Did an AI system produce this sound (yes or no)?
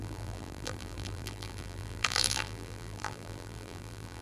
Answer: yes